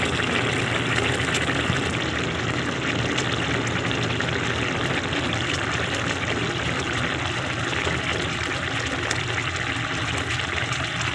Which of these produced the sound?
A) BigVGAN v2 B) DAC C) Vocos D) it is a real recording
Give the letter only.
D